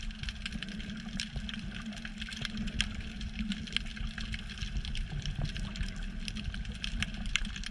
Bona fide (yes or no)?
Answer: yes